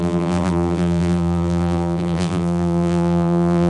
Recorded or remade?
remade